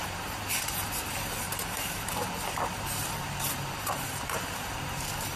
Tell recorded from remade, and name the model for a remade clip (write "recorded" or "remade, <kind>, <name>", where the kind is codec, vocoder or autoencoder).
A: remade, vocoder, BigVGAN v2